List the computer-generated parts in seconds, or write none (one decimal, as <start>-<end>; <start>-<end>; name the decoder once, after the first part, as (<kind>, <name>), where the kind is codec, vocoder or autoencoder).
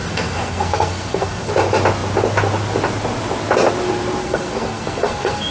0.0-1.5 (codec, SNAC); 4.2-5.5